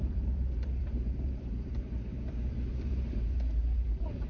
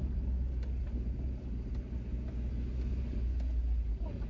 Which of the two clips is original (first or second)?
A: second